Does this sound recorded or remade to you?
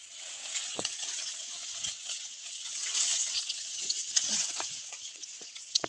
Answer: remade